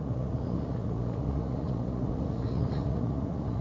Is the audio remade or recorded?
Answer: remade